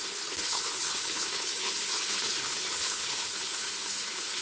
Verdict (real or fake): fake